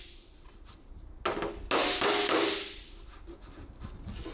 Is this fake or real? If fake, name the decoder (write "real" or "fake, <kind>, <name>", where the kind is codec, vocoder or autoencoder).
real